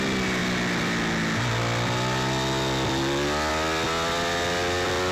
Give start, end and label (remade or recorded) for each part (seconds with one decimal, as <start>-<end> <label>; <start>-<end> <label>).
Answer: 0.0-5.1 recorded